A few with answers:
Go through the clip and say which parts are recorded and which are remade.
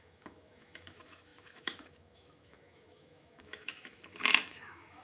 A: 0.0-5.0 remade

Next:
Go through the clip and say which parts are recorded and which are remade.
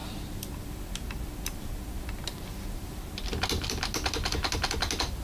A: 0.0-3.1 remade; 3.1-5.2 recorded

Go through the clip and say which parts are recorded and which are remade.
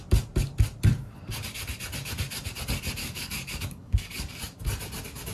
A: 0.0-3.0 recorded; 3.0-4.3 remade; 4.3-5.3 recorded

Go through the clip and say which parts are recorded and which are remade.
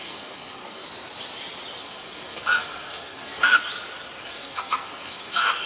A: 0.0-0.8 remade; 0.8-1.8 recorded; 1.8-3.6 remade; 3.6-4.2 recorded; 4.2-5.7 remade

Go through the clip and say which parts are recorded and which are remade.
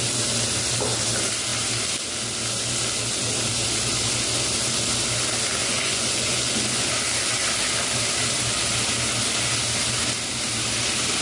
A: 0.0-5.6 recorded; 5.6-6.9 remade; 6.9-11.2 recorded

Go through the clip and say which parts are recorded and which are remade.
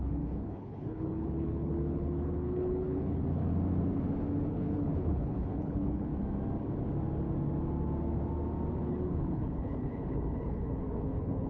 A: 0.0-3.4 remade; 3.4-4.5 recorded; 4.5-6.1 remade; 6.1-8.8 recorded; 8.8-11.5 remade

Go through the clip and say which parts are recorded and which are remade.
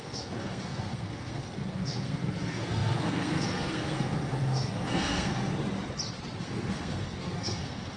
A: 0.0-5.5 remade; 5.5-6.4 recorded; 6.4-8.0 remade